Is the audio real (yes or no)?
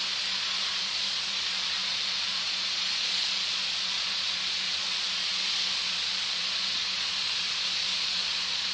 no